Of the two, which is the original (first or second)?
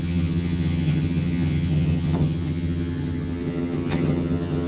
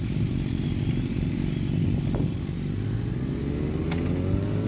second